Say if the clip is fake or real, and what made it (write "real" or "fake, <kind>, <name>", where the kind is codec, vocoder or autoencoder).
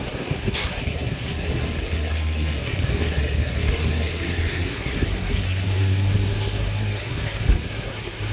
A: fake, codec, SNAC